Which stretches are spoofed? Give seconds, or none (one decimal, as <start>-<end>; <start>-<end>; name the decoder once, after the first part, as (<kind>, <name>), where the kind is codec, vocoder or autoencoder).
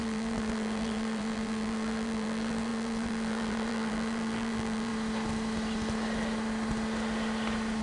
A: 0.0-4.9 (vocoder, BigVGAN v2)